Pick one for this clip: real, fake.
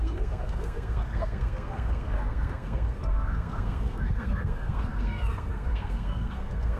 fake